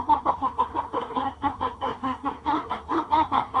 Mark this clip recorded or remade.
remade